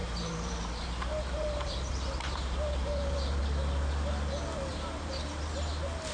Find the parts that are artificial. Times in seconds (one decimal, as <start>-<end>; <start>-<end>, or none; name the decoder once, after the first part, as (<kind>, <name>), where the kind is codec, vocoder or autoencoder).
0.0-3.4 (vocoder, BigVGAN v2); 4.7-5.4